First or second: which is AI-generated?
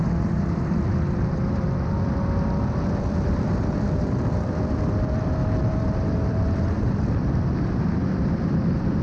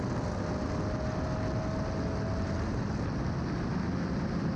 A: first